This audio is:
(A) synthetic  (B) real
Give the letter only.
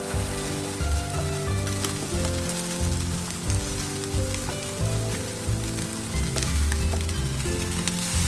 B